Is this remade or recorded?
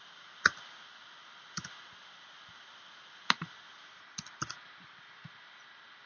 recorded